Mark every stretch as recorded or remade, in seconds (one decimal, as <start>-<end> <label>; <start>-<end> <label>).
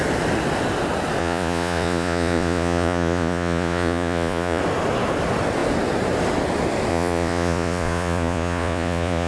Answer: 0.0-1.2 recorded; 1.2-4.6 remade; 4.6-6.9 recorded; 6.9-9.3 remade